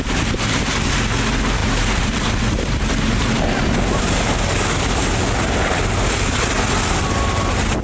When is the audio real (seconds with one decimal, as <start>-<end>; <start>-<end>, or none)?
0.0-1.6; 3.6-7.8